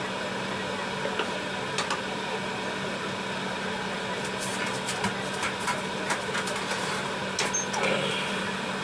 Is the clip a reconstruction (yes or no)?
no